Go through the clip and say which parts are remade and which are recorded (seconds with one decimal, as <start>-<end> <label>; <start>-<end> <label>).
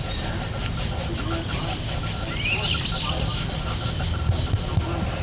0.0-5.2 recorded